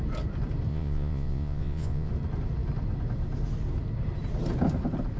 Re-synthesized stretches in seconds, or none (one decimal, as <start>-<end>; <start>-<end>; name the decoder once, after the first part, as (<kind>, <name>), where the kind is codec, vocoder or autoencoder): 0.7-2.1 (vocoder, Vocos)

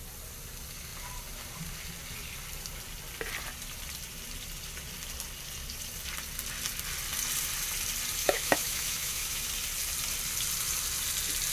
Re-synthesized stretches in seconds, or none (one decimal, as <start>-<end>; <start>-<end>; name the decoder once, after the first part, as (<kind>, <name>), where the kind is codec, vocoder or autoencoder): 8.2-9.5 (autoencoder, DAC-VAE)

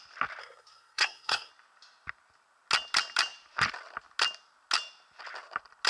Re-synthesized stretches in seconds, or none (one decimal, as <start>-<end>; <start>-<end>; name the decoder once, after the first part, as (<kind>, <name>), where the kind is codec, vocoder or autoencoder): 0.4-1.5 (codec, SNAC)